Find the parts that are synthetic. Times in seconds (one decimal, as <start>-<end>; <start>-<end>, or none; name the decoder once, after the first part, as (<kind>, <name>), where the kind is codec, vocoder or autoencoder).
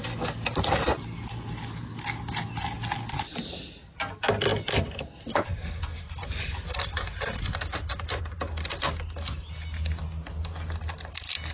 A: none